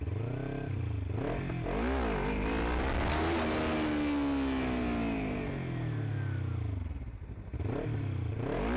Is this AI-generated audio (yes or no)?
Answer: no